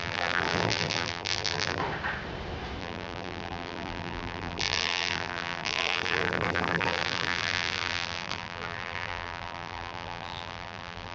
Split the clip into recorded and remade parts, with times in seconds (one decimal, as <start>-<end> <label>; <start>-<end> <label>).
0.0-1.8 remade; 1.8-2.8 recorded; 2.8-11.1 remade